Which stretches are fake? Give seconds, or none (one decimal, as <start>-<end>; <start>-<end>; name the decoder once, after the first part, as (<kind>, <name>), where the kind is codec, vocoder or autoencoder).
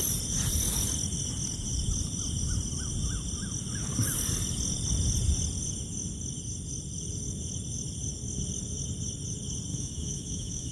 9.7-10.7 (autoencoder, DAC-VAE)